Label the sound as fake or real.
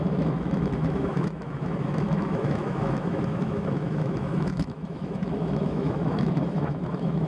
fake